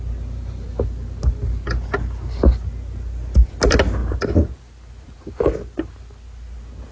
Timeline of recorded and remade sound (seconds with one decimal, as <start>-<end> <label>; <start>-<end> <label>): 0.0-6.9 recorded